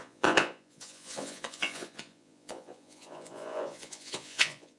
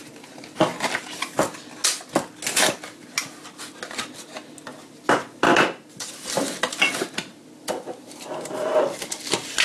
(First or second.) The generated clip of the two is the first